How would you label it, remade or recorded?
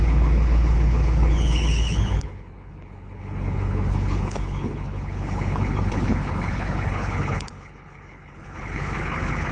remade